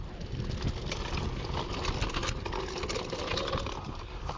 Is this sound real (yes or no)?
yes